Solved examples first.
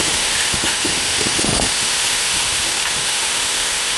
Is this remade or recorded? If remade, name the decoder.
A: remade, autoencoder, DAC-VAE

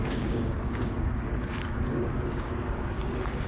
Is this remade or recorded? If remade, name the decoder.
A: remade, codec, DAC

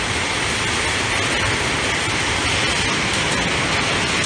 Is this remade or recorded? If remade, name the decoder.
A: recorded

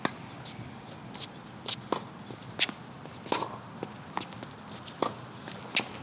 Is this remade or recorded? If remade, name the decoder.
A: recorded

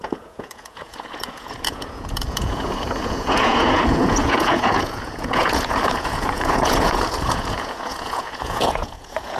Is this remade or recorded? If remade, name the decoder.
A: remade, vocoder, Vocos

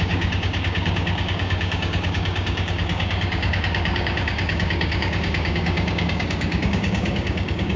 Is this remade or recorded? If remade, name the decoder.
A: remade, codec, DAC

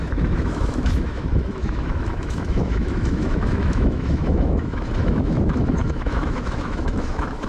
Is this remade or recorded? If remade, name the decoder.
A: remade, autoencoder, DAC-VAE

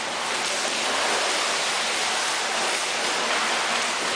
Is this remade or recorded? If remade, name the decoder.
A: recorded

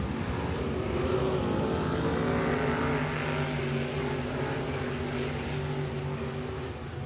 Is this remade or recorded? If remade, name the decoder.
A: recorded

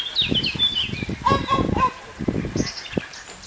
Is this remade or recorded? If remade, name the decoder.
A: recorded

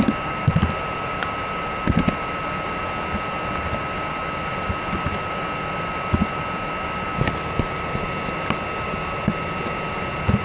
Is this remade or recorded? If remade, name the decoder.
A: recorded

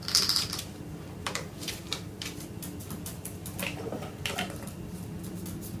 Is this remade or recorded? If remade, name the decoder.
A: recorded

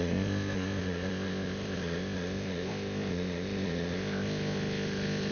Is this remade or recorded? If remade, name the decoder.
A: remade, codec, ZipCodec